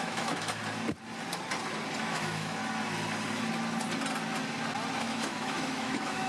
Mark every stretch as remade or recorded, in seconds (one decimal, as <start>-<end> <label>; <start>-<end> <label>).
0.0-0.6 remade; 0.6-2.0 recorded; 2.0-2.6 remade; 2.6-5.0 recorded; 5.0-6.3 remade

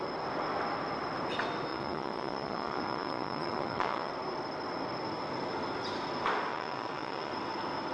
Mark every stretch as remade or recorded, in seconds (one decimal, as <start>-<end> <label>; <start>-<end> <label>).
0.0-1.7 recorded; 1.7-4.1 remade; 4.1-6.5 recorded; 6.5-7.3 remade; 7.3-7.9 recorded

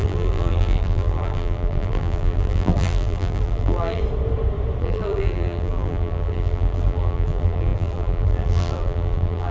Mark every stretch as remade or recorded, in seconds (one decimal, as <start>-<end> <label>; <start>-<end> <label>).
0.0-4.0 remade; 4.0-4.8 recorded; 4.8-9.5 remade